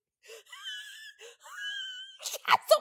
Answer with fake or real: real